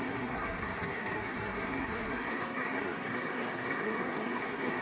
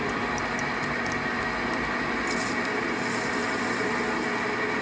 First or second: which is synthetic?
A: first